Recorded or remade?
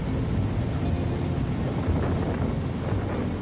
recorded